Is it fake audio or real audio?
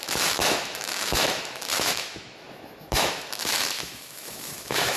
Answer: fake